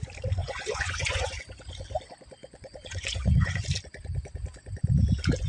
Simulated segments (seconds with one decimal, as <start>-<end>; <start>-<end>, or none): 0.4-1.4; 2.4-3.6